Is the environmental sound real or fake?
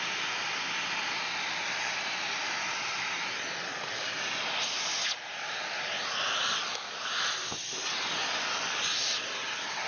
real